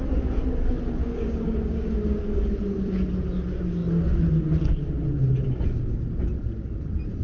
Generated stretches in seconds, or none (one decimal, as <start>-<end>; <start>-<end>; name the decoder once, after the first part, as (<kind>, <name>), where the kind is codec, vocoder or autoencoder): 1.0-2.5 (codec, DAC)

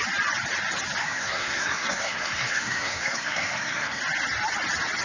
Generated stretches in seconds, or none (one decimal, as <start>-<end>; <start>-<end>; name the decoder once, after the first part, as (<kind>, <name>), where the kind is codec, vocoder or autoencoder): 1.0-4.0 (codec, SNAC)

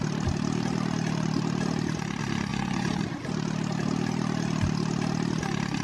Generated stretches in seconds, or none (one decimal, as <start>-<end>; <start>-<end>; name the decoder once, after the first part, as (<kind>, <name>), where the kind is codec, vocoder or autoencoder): 2.5-3.0 (vocoder, Vocos)

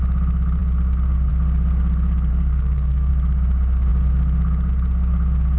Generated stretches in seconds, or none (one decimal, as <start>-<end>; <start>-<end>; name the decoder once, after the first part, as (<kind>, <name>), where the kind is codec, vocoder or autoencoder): 2.3-3.1 (codec, SNAC)

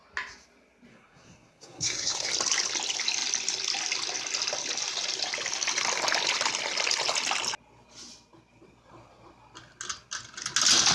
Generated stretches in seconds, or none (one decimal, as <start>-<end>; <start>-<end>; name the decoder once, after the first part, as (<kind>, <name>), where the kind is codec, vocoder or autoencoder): 0.9-2.3 (codec, SNAC)

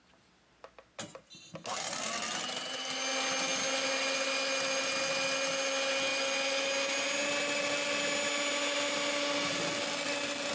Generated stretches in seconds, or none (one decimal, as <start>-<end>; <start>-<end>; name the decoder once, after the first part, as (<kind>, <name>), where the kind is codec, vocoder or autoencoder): none

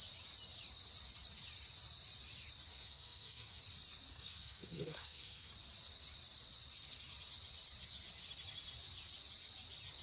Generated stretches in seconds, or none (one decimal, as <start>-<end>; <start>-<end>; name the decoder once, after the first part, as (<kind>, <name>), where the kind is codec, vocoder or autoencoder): 2.7-3.6 (codec, SNAC); 4.1-5.5